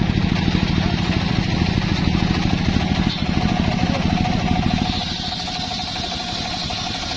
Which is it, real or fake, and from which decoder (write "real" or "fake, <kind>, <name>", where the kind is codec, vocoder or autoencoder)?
real